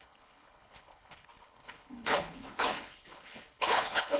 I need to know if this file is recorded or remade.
remade